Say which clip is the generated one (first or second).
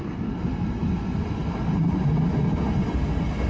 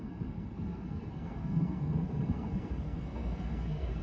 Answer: second